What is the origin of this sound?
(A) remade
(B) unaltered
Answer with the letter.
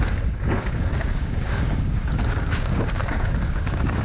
A